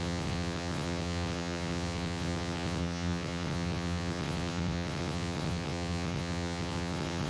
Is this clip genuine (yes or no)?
no